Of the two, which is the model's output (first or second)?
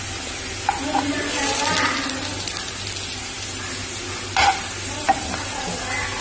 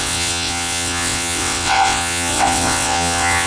second